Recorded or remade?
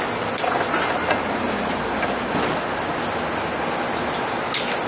recorded